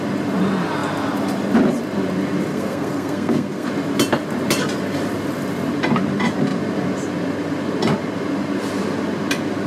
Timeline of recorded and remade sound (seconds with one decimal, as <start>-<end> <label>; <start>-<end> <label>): 0.0-2.5 recorded; 2.5-3.7 remade; 3.7-9.7 recorded